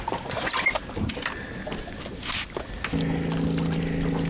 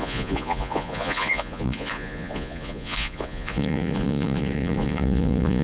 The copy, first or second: second